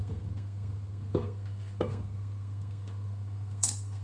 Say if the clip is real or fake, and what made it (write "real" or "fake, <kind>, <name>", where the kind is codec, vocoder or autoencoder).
fake, codec, SNAC